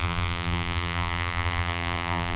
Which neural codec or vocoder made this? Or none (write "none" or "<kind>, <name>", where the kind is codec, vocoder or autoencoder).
vocoder, BigVGAN v2